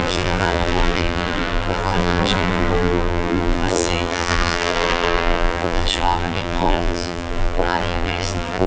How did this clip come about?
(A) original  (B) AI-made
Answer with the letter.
B